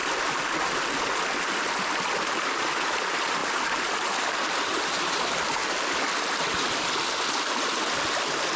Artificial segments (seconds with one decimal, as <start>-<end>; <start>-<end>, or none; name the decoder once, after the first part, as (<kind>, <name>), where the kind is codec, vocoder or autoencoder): none

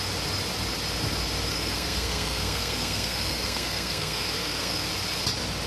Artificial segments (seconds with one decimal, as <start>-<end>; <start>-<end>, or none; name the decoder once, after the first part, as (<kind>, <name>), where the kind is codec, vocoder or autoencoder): 1.5-4.9 (codec, SNAC)

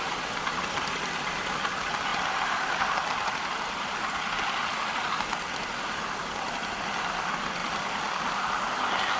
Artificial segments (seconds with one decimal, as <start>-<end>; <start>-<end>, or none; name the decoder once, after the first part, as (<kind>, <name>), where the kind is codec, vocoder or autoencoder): 7.6-8.4 (vocoder, BigVGAN v2)

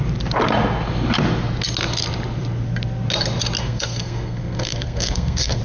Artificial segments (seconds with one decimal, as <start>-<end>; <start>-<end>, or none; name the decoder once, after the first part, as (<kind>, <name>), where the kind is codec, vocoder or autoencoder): 3.6-5.6 (codec, SNAC)

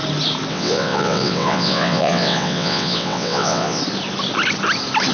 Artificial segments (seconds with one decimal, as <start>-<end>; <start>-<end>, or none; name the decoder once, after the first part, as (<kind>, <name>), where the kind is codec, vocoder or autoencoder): 0.5-3.8 (vocoder, WaveNeXt)

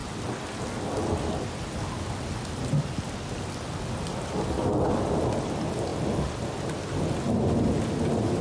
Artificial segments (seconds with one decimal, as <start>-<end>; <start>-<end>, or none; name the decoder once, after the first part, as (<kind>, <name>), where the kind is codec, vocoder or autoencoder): none